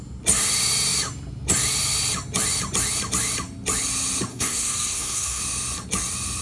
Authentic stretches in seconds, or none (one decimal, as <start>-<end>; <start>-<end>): 0.0-4.3; 5.4-6.4

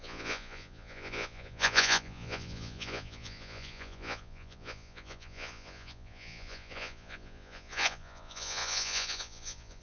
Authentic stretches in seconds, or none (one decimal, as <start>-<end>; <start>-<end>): none

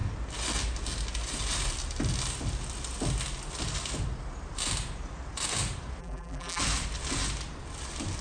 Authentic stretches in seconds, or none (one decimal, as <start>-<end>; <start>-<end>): 0.0-6.0; 6.6-8.2

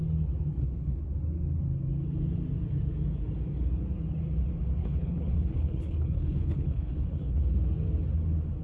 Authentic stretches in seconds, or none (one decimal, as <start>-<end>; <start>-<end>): 0.0-0.5; 1.0-4.8; 7.4-8.6